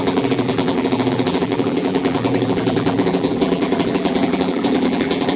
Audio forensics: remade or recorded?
remade